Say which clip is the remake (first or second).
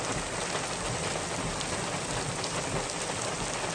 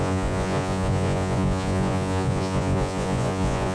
second